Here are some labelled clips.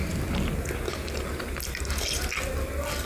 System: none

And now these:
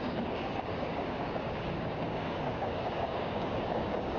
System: codec, DAC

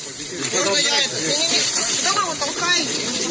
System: none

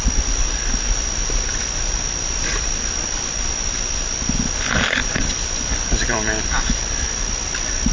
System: vocoder, BigVGAN v2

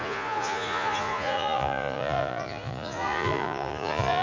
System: vocoder, Vocos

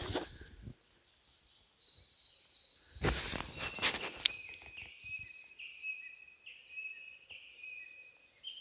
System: none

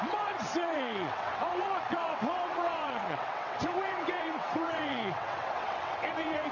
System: vocoder, WaveNeXt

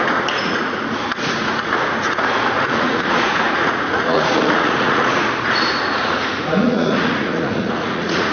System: vocoder, Vocos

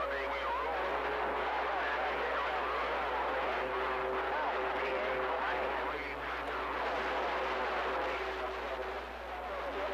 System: none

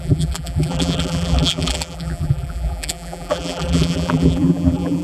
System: vocoder, BigVGAN v2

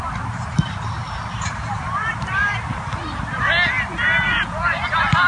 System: vocoder, BigVGAN v2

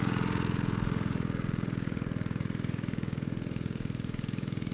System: codec, DAC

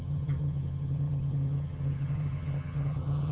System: vocoder, HiFi-GAN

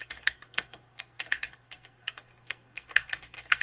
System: codec, SNAC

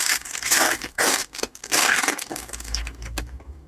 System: codec, DAC